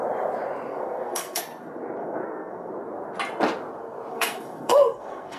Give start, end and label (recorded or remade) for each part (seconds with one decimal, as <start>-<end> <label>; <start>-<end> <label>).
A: 0.0-0.7 recorded; 0.7-1.4 remade; 1.4-2.0 recorded; 2.0-2.7 remade; 2.7-4.1 recorded; 4.1-5.4 remade